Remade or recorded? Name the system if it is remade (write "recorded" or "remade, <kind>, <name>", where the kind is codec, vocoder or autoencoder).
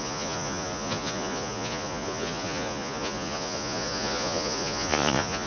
remade, vocoder, Vocos